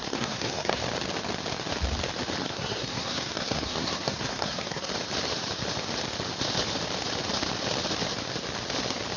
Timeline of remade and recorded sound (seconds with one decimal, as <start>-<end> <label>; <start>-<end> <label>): 0.0-0.8 remade; 0.8-2.4 recorded; 2.4-4.9 remade; 4.9-9.2 recorded